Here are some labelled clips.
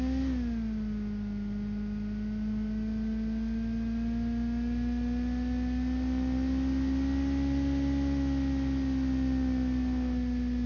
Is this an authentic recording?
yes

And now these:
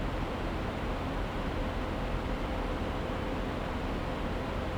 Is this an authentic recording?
yes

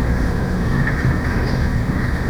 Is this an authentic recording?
no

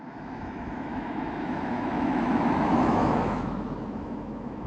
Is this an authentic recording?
no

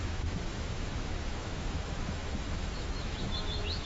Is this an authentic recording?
no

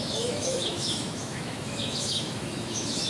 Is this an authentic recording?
no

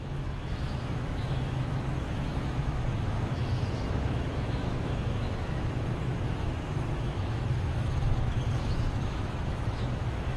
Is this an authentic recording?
no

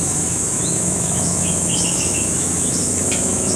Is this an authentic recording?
no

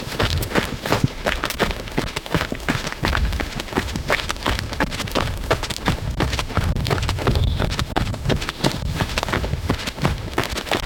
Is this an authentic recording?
no